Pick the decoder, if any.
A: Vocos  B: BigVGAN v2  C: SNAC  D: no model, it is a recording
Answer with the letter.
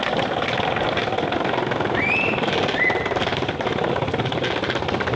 D